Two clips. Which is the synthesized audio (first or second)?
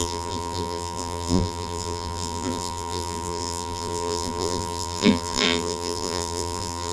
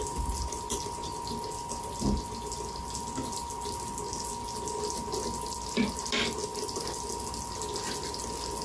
first